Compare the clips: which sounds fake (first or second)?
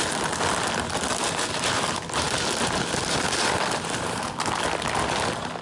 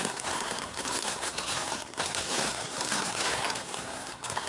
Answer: second